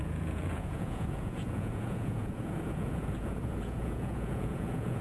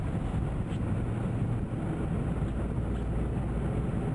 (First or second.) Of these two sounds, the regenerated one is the first